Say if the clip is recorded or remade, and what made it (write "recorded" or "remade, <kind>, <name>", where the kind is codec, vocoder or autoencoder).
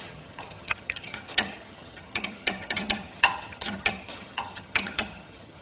remade, vocoder, HiFi-GAN